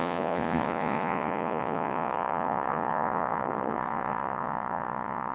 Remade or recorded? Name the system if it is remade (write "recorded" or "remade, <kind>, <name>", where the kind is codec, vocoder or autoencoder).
remade, vocoder, Vocos